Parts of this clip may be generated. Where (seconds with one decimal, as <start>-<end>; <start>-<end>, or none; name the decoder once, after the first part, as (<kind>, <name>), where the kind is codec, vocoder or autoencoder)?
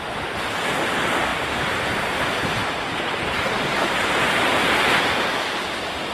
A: 1.3-5.0 (vocoder, BigVGAN v2)